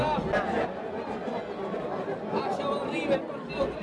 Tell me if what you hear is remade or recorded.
recorded